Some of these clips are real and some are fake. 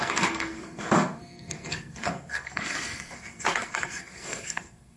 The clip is fake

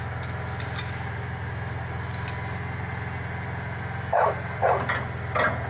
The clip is real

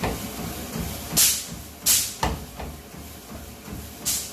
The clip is real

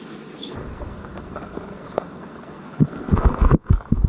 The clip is fake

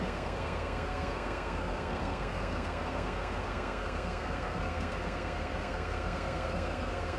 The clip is fake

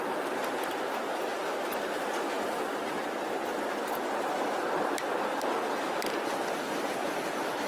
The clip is real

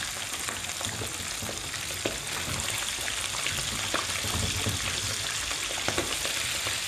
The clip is real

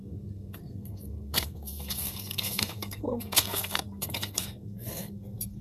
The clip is fake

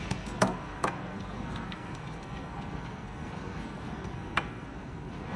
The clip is fake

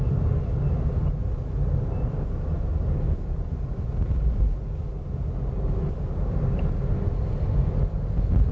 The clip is real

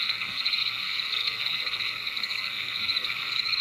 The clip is fake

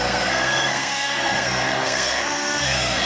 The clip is fake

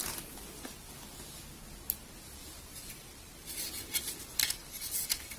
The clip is real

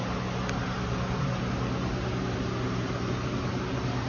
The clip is real